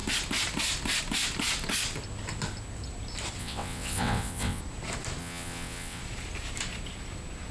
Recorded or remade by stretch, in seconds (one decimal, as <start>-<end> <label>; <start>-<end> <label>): 0.0-3.4 recorded; 3.4-4.6 remade; 4.6-5.2 recorded; 5.2-6.0 remade; 6.0-7.5 recorded